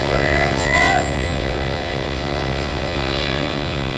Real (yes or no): no